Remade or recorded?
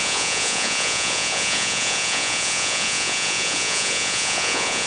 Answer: remade